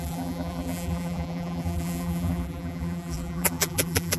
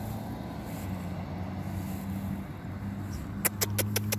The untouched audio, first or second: second